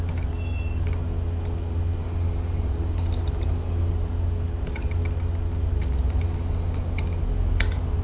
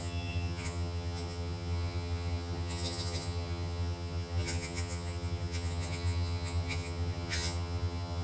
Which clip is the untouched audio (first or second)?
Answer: first